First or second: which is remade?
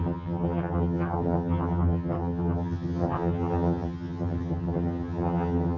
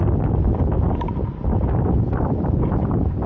first